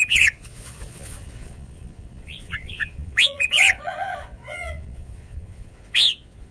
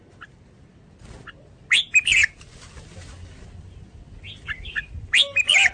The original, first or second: second